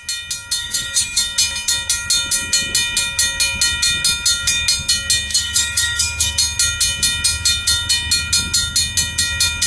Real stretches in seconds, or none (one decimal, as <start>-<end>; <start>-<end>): 0.0-0.6; 1.2-5.3; 6.3-9.7

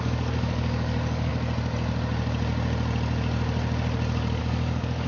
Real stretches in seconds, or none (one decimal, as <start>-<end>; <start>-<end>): 1.3-4.4

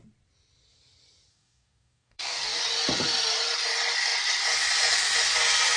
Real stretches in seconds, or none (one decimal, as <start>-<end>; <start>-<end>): 0.0-1.3; 2.6-5.8